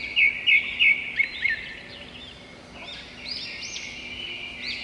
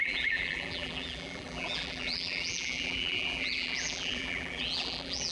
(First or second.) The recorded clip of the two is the first